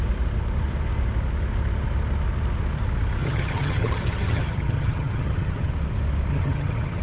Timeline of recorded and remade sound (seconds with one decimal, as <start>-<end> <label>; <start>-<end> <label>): 0.0-3.2 recorded; 3.2-5.7 remade; 5.7-6.3 recorded; 6.3-7.0 remade